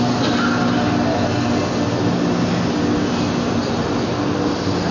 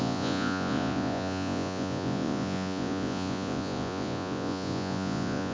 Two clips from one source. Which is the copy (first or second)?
second